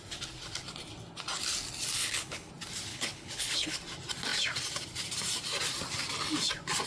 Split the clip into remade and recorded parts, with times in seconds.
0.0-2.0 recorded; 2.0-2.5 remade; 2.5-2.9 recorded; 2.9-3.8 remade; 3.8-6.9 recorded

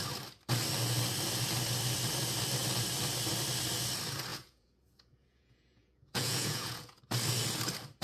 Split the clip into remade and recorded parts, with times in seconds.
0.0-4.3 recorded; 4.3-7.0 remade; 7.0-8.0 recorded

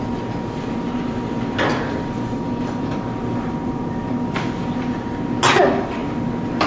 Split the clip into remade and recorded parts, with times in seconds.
0.0-6.7 recorded

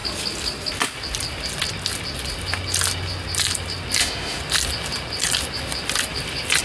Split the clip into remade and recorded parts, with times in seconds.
0.0-4.0 recorded; 4.0-4.4 remade; 4.4-6.6 recorded

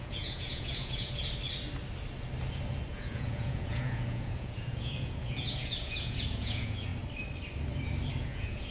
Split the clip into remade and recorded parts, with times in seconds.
0.0-1.2 remade; 1.2-2.9 recorded; 2.9-6.9 remade; 6.9-8.2 recorded; 8.2-8.7 remade

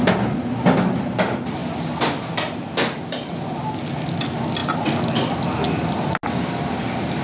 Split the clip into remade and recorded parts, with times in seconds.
0.0-7.2 recorded

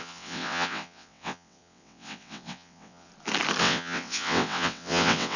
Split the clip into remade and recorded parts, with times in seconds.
0.0-3.1 remade; 3.1-3.6 recorded; 3.6-5.4 remade

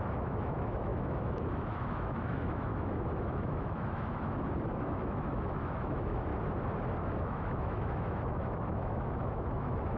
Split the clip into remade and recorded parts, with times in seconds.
0.0-6.3 remade; 6.3-7.2 recorded; 7.2-10.0 remade